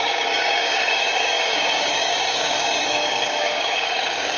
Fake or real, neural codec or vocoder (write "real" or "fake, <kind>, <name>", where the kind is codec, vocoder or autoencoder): fake, codec, DAC